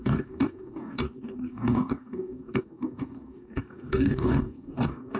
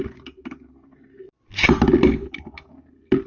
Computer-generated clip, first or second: first